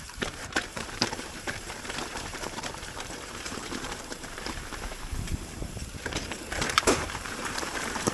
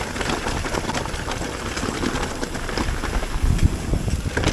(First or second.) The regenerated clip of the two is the first